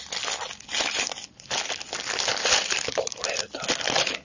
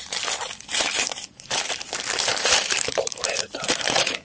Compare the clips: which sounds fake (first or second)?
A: second